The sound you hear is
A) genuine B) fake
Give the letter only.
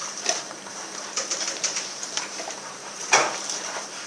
B